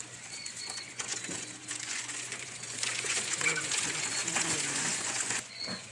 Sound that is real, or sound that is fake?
fake